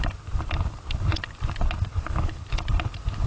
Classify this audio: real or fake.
real